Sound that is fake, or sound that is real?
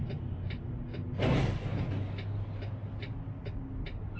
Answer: real